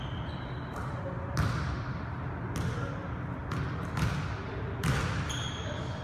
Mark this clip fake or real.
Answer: real